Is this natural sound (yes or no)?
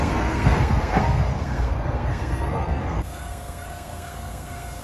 no